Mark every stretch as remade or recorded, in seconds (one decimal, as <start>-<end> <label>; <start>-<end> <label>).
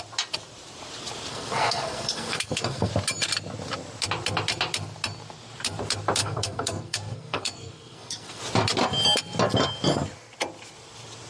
0.0-1.3 recorded; 1.3-2.9 remade; 2.9-6.2 recorded; 6.2-8.4 remade; 8.4-11.3 recorded